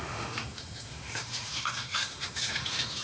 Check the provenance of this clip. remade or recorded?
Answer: remade